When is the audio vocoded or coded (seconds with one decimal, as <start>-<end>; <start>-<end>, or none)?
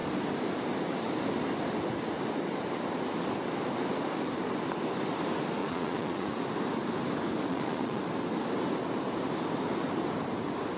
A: 5.6-6.4; 7.5-8.0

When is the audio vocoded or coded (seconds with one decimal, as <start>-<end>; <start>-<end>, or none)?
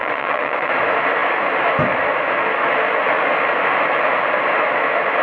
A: 0.0-0.7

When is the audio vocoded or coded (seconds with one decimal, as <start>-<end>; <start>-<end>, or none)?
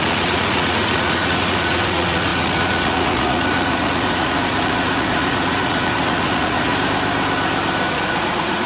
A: 0.0-6.7; 7.9-8.7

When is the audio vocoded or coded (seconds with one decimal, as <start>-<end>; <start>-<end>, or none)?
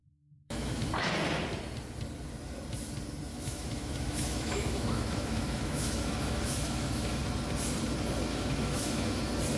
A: 0.0-0.9; 3.3-7.2; 8.3-9.2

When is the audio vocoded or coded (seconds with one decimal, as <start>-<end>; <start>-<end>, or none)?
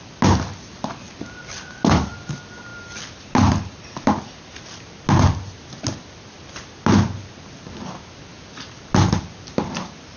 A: none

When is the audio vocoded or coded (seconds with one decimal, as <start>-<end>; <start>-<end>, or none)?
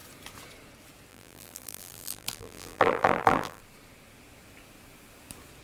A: 1.1-3.6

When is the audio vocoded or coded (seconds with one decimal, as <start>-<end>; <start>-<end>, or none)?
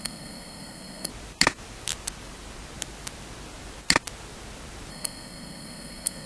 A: 0.0-1.1; 4.9-6.3